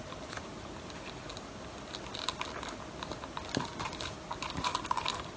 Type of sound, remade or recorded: recorded